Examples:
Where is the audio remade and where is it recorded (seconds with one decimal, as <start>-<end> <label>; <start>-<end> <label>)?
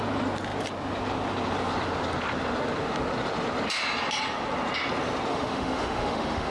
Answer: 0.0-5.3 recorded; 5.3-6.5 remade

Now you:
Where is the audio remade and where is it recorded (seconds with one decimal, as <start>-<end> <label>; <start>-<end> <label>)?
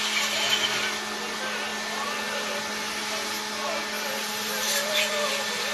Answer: 0.0-5.7 recorded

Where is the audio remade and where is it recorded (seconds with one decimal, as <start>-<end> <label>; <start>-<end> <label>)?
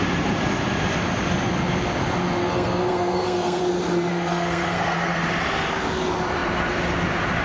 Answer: 0.0-2.4 recorded; 2.4-3.6 remade; 3.6-4.1 recorded; 4.1-5.3 remade; 5.3-7.4 recorded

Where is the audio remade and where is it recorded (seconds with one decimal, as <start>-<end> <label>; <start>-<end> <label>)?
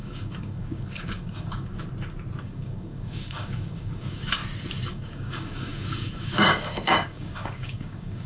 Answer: 0.0-1.7 remade; 1.7-2.4 recorded; 2.4-4.4 remade; 4.4-4.9 recorded; 4.9-8.3 remade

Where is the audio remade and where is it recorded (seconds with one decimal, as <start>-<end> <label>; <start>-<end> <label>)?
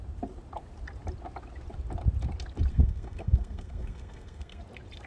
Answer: 0.0-2.7 recorded; 2.7-4.6 remade; 4.6-5.1 recorded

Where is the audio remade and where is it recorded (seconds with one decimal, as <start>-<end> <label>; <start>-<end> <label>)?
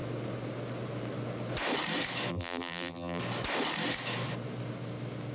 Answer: 0.0-2.3 recorded; 2.3-3.2 remade; 3.2-5.3 recorded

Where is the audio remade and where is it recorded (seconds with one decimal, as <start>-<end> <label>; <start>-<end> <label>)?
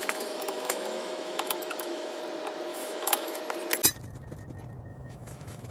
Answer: 0.0-2.2 remade; 2.2-2.7 recorded; 2.7-3.4 remade; 3.4-4.9 recorded; 4.9-5.7 remade